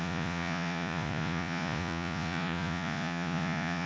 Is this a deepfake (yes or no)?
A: yes